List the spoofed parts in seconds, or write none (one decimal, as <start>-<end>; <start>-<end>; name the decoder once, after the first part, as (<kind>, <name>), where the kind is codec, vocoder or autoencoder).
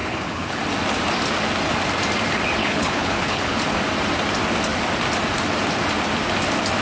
0.0-0.6 (codec, HILCodec); 2.6-3.6